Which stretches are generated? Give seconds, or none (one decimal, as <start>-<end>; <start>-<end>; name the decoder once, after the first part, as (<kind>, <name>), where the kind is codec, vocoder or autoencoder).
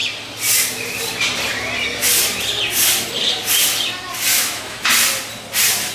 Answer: 4.3-4.9 (autoencoder, DAC-VAE)